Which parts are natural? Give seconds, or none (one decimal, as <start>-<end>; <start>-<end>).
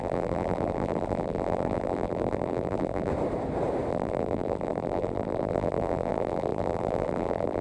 3.1-3.9